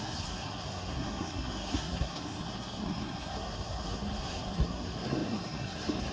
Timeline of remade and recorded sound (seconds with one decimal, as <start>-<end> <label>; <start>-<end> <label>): 0.0-6.1 remade